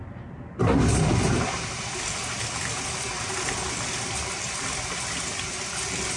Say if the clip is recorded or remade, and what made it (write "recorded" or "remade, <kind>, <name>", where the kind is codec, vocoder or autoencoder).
recorded